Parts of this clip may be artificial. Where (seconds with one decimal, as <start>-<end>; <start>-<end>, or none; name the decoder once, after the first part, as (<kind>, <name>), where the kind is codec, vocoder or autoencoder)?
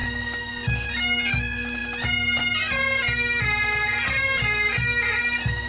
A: none